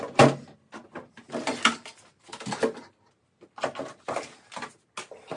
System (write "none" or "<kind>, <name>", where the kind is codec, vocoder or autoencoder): none